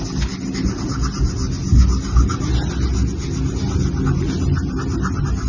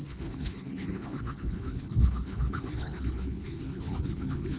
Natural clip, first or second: first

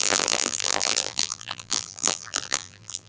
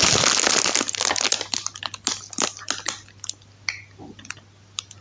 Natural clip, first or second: second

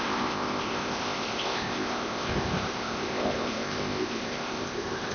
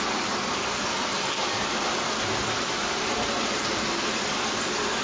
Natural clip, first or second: second